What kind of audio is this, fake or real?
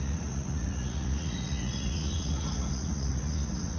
fake